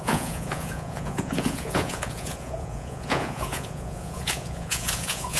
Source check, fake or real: fake